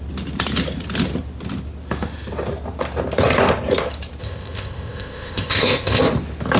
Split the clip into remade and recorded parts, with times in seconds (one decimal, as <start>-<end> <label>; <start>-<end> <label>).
0.0-4.2 recorded; 4.2-6.0 remade; 6.0-6.6 recorded